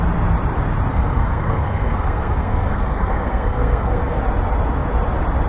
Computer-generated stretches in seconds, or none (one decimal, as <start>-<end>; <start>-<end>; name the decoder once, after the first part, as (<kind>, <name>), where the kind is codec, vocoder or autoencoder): 0.9-4.2 (codec, SNAC)